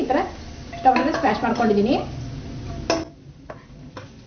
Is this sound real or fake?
real